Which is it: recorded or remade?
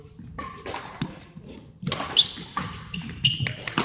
recorded